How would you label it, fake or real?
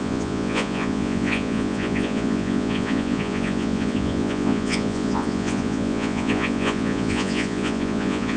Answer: fake